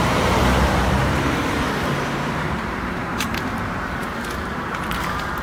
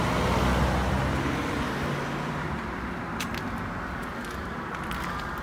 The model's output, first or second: first